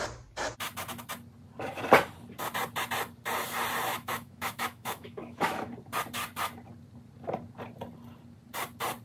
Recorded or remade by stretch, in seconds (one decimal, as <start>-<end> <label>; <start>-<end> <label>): 0.0-3.9 recorded; 3.9-5.7 remade; 5.7-9.0 recorded